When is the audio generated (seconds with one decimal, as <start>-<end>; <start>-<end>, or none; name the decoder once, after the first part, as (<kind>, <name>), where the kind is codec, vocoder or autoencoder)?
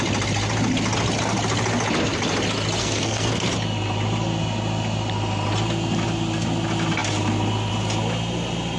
2.8-3.5 (codec, SNAC)